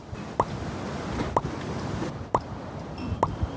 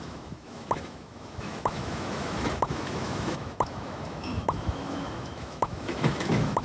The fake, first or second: second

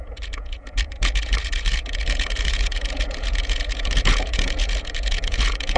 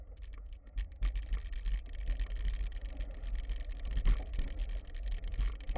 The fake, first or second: first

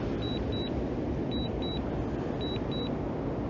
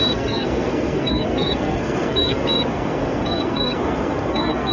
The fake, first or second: second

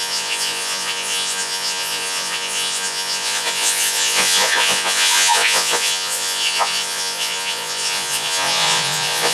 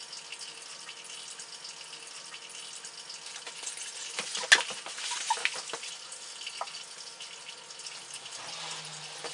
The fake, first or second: first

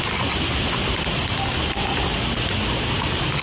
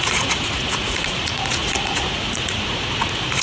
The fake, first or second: second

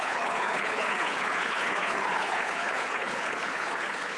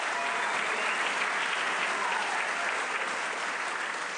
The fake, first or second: first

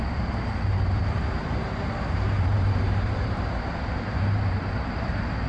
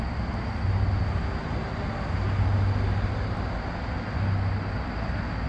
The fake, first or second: first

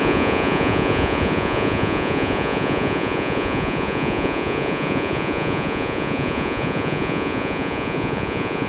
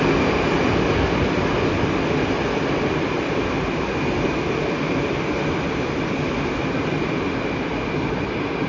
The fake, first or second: first